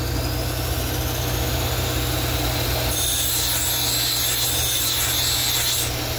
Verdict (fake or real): real